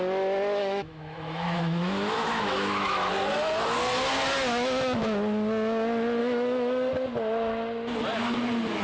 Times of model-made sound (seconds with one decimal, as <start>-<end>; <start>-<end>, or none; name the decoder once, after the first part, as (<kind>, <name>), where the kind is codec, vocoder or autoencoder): 0.6-3.1 (autoencoder, DAC-VAE); 4.5-5.0; 6.2-6.9